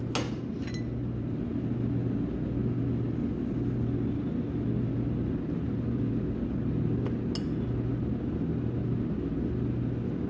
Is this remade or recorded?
recorded